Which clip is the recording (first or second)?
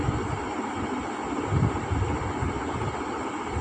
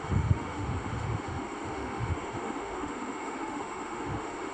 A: first